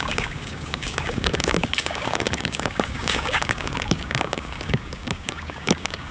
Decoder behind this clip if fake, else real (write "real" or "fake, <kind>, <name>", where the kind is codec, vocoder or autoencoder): fake, codec, DAC